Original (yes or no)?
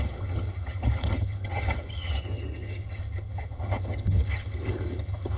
no